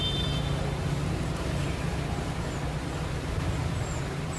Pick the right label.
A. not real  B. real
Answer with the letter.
B